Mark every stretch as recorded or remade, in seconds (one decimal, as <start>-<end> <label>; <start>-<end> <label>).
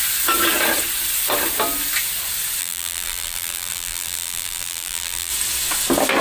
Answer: 0.0-2.6 recorded; 2.6-5.3 remade; 5.3-6.2 recorded